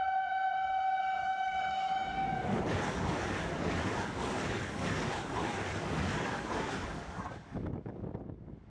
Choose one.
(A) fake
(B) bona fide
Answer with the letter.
A